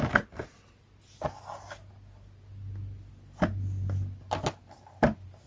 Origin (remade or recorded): recorded